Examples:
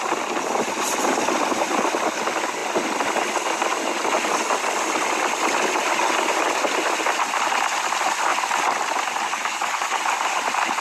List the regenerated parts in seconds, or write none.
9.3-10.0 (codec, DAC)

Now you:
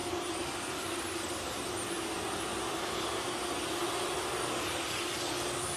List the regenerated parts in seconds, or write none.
none

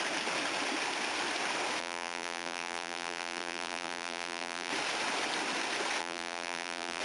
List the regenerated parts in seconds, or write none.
1.8-4.7 (vocoder, BigVGAN v2); 6.0-7.0

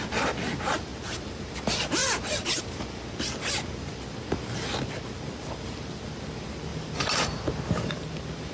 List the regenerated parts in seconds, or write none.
2.0-3.0 (vocoder, BigVGAN v2); 6.7-7.9